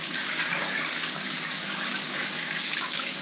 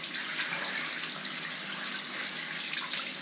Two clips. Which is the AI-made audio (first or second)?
first